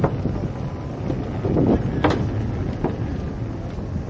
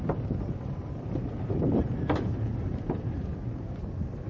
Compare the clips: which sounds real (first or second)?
first